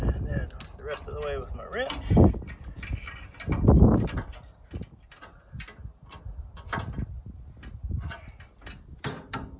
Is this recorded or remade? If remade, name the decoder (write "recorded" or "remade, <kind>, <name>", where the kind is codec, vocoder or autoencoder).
recorded